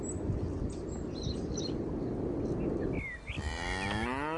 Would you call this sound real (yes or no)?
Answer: yes